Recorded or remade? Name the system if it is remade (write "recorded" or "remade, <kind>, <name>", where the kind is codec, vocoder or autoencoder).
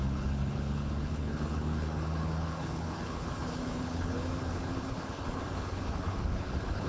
remade, codec, HILCodec